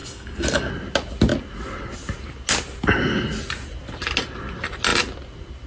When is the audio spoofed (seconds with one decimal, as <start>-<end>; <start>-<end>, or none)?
0.0-0.7